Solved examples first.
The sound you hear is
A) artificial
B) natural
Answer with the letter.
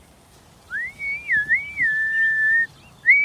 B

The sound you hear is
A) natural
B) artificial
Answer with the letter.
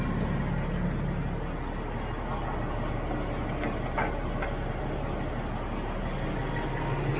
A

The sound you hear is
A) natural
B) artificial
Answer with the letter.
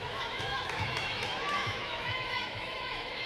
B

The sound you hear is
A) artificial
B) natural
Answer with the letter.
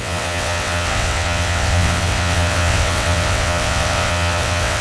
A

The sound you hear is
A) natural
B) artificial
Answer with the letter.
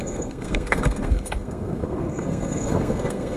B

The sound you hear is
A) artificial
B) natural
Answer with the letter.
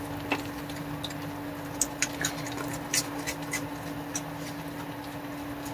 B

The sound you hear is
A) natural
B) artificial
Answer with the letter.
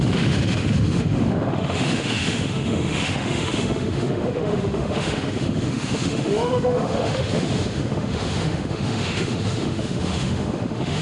B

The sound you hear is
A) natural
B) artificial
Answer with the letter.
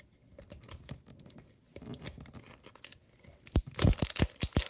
A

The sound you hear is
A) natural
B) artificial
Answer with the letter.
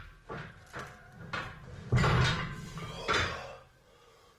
A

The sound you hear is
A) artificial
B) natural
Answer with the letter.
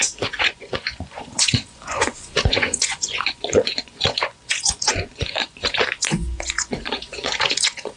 A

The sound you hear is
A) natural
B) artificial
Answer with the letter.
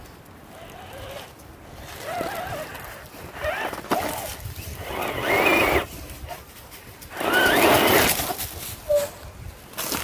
A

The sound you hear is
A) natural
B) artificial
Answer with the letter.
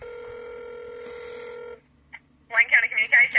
A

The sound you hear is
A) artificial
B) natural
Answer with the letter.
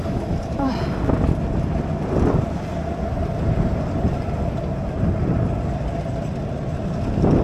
B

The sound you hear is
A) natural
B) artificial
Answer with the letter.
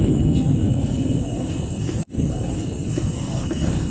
B